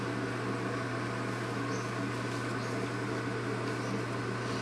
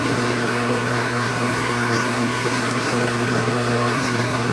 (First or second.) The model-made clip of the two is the second